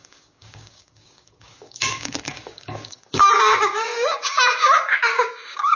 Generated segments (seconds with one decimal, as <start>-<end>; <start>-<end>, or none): 0.0-5.8